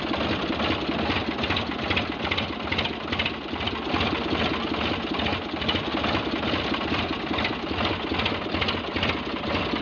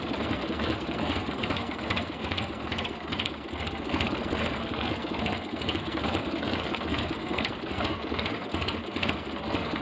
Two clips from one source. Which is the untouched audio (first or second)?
first